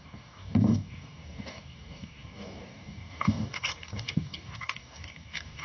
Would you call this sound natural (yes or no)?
no